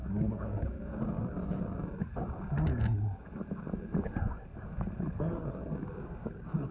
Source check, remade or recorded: recorded